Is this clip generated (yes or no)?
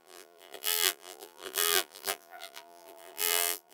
yes